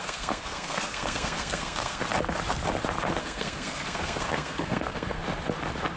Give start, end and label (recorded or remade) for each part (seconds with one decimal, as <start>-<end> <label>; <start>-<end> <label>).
0.0-2.0 remade; 2.0-3.2 recorded; 3.2-5.2 remade; 5.2-6.0 recorded